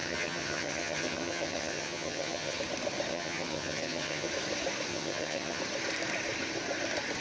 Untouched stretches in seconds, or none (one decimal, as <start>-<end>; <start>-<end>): 2.6-3.1; 4.3-4.9; 5.6-7.2